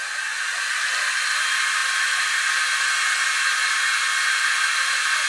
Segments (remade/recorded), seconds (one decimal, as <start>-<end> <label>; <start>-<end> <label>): 0.0-5.3 recorded